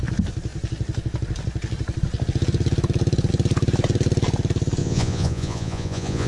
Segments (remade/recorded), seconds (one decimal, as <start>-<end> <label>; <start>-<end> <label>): 0.0-4.8 recorded; 4.8-6.3 remade